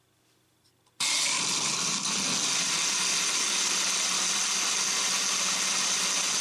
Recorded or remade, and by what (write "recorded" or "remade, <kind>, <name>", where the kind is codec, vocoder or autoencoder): recorded